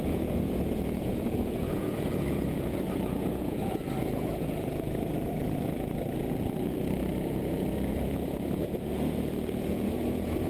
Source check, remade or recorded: remade